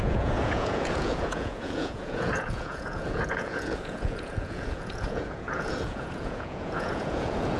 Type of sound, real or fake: fake